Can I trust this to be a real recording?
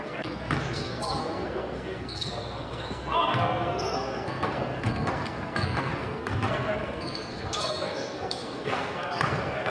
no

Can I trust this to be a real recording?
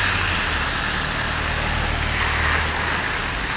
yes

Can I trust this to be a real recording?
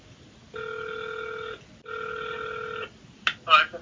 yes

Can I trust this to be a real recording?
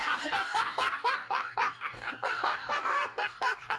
no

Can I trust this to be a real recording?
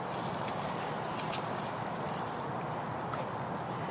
yes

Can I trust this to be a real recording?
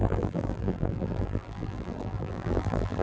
no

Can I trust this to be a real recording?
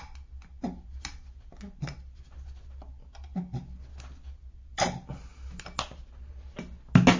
yes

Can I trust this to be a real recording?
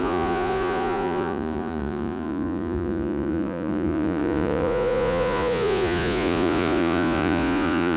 no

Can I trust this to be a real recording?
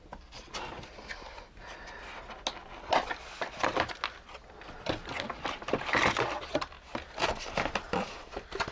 yes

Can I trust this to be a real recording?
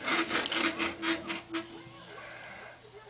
yes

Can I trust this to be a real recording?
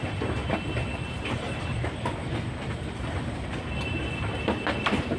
yes